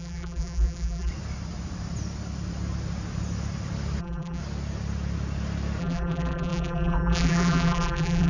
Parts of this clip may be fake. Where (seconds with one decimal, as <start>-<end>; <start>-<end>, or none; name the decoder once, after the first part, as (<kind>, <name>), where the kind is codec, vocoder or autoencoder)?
0.0-1.1 (vocoder, BigVGAN v2); 4.0-4.4; 5.8-8.3